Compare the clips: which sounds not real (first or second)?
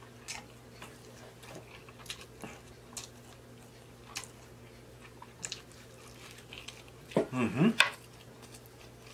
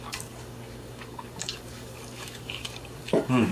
second